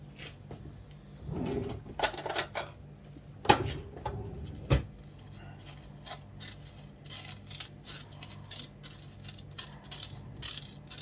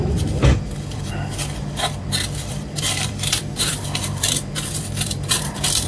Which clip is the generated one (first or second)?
second